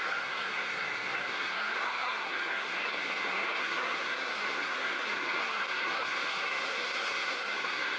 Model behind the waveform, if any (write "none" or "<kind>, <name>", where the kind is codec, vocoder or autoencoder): codec, SNAC